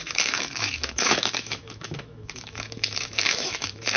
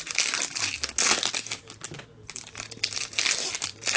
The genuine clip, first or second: second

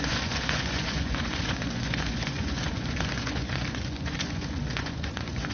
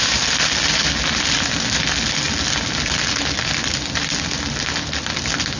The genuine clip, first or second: second